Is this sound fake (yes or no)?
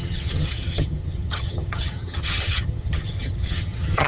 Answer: yes